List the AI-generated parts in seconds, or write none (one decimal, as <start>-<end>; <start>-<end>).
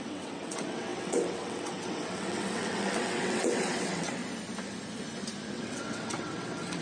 0.0-4.2; 5.5-6.8